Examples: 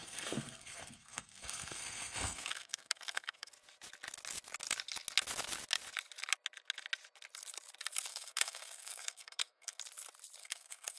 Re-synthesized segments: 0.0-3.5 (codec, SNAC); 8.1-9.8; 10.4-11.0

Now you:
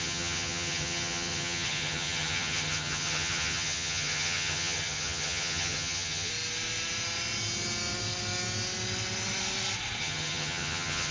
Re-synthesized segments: 0.0-6.3 (vocoder, HiFi-GAN); 10.0-11.1

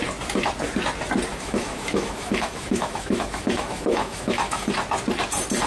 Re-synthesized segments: 1.3-4.7 (autoencoder, DAC-VAE)

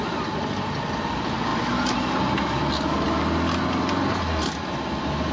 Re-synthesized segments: none

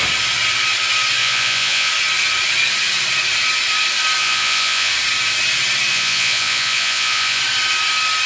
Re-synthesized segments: 1.2-1.9 (vocoder, Vocos); 4.2-4.9; 5.9-7.4

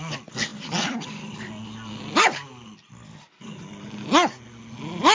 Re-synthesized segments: none